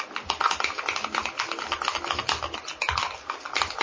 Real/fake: real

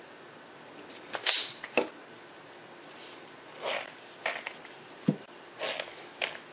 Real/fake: real